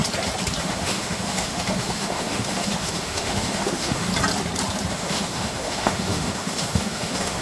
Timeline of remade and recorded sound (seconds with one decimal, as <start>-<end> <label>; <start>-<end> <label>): 0.0-0.6 recorded; 0.6-4.1 remade; 4.1-4.9 recorded; 4.9-7.4 remade